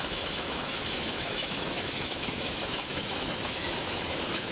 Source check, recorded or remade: remade